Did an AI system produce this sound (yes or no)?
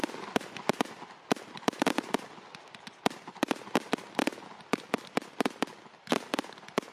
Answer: no